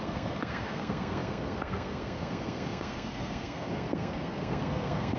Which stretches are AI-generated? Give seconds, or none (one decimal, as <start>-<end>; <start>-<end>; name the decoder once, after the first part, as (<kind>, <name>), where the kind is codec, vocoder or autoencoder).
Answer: 0.0-5.2 (codec, SNAC)